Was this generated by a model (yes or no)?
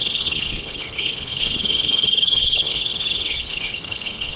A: yes